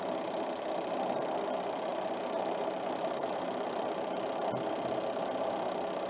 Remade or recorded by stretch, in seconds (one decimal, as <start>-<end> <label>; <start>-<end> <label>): 0.0-6.1 recorded